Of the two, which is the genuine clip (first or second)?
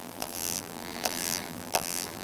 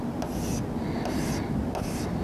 second